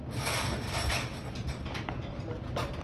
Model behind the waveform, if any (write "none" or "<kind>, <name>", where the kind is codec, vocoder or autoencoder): none